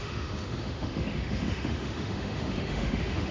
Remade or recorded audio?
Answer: remade